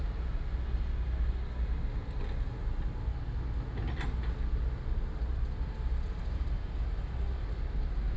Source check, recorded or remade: recorded